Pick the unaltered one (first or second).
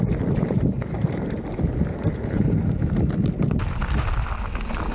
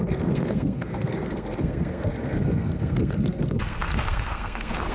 first